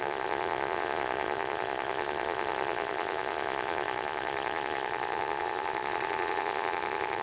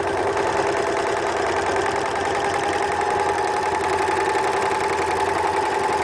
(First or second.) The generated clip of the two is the first